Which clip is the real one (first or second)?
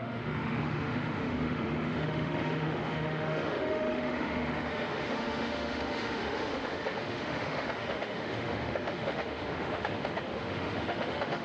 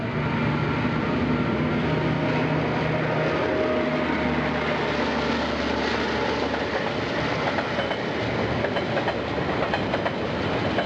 second